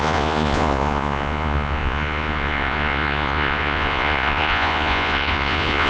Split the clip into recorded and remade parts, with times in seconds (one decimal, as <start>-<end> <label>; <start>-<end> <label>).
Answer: 0.0-5.9 remade